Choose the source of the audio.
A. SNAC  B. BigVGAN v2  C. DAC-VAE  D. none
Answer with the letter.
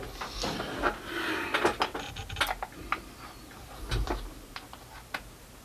D